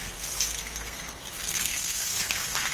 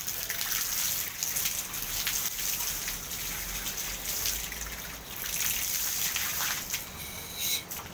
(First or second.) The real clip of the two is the second